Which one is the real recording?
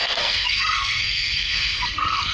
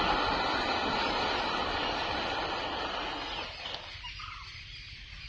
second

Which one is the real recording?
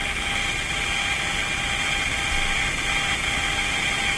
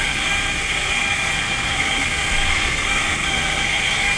first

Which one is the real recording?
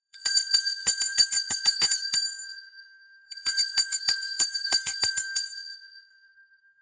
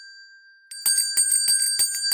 second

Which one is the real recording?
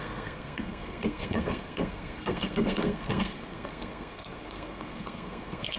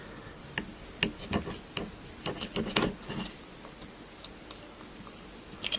second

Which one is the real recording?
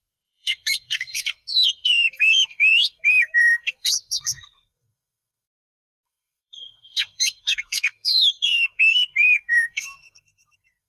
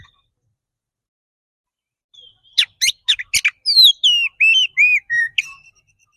second